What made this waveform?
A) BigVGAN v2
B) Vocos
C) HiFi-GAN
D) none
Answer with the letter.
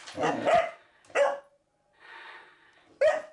D